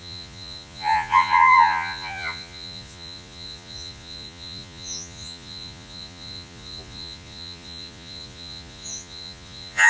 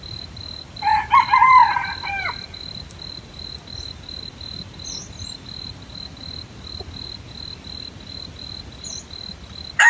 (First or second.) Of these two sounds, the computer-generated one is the first